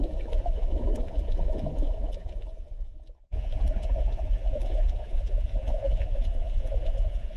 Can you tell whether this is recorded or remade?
remade